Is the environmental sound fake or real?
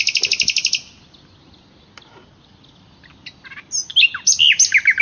real